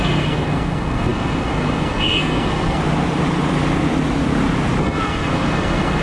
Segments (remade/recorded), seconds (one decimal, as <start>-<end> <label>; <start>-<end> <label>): 0.0-2.8 remade; 2.8-4.8 recorded; 4.8-6.0 remade